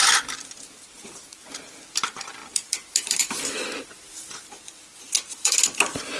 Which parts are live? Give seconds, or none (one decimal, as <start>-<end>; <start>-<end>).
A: 1.5-2.4